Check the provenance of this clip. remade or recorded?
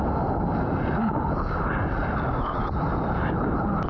recorded